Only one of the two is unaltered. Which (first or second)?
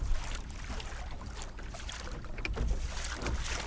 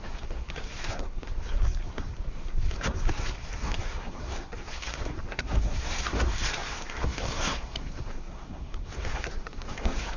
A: first